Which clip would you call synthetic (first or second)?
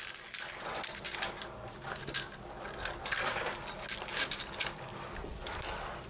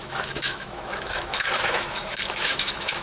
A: second